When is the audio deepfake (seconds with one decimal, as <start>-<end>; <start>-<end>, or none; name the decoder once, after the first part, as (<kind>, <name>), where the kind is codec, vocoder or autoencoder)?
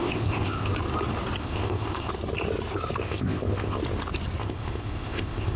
0.0-0.7 (codec, ZipCodec); 1.4-2.1; 3.0-3.8; 4.4-5.6